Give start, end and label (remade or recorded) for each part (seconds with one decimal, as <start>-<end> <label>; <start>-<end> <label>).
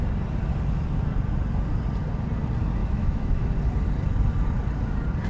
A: 0.0-2.8 recorded; 2.8-3.5 remade; 3.5-5.3 recorded